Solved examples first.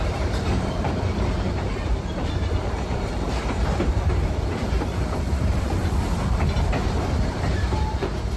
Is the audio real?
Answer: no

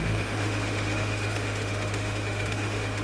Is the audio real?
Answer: no